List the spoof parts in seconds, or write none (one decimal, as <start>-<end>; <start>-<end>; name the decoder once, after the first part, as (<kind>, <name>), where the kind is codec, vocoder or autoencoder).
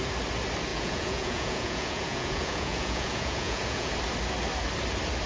0.7-3.9 (vocoder, Vocos)